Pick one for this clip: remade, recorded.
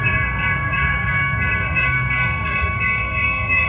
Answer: remade